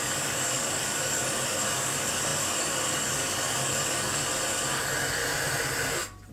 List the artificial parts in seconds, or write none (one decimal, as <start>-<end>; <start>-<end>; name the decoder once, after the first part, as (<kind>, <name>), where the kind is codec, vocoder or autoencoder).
0.0-4.2 (codec, DAC); 4.8-5.2